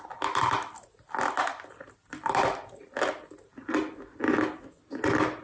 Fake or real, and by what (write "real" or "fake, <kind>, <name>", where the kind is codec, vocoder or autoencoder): real